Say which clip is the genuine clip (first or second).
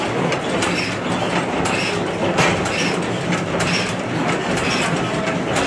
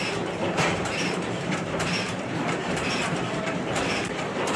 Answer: first